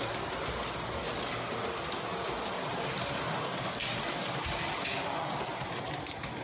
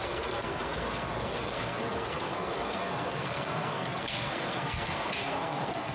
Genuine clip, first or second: first